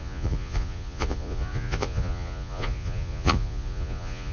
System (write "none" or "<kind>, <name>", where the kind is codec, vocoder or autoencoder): vocoder, Vocos